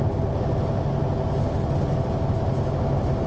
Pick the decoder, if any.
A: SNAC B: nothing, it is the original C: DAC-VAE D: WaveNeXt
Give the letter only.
B